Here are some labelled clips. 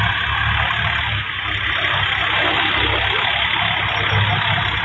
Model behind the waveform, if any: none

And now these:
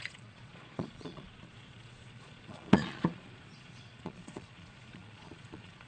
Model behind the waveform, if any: vocoder, Vocos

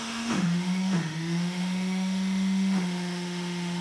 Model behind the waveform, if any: autoencoder, DAC-VAE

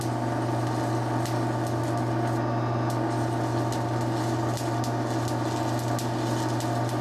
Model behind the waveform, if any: none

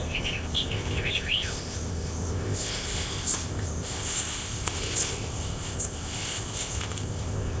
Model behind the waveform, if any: codec, ZipCodec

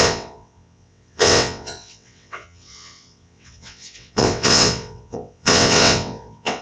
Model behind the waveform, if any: vocoder, WaveNeXt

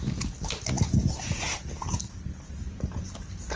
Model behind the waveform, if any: none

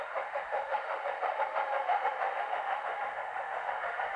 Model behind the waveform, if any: autoencoder, DAC-VAE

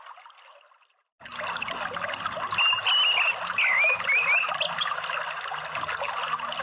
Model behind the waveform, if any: none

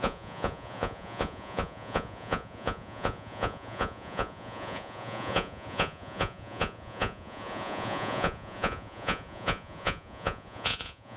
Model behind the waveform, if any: vocoder, Vocos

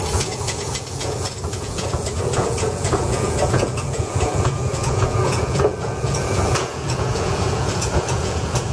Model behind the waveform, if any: vocoder, Vocos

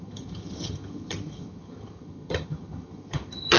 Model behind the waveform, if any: vocoder, HiFi-GAN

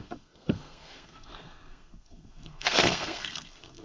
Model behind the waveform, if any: codec, SNAC